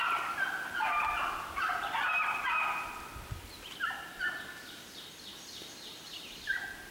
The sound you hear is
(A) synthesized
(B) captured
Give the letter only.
B